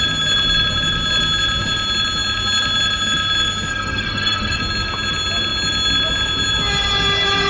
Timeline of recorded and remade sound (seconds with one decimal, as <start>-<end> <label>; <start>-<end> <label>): 0.0-3.7 recorded; 3.7-4.6 remade; 4.6-7.5 recorded